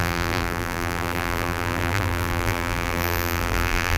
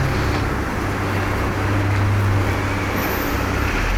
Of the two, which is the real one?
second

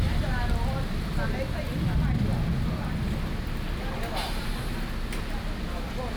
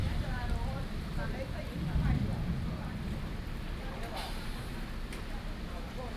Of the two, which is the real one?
first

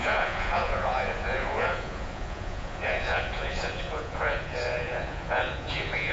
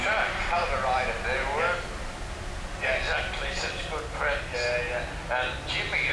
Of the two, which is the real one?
second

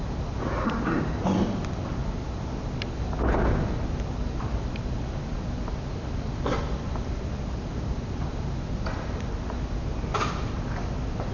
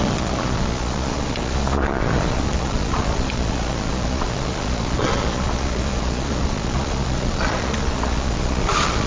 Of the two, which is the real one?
first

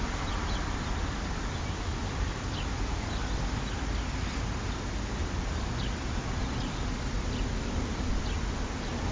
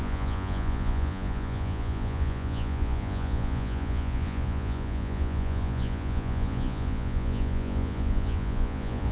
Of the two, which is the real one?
first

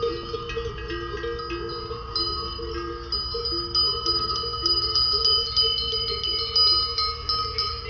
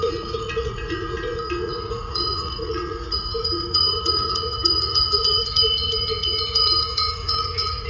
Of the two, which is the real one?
first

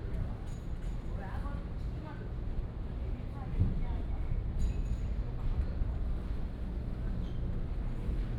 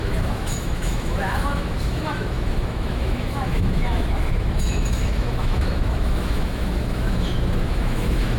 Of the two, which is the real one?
first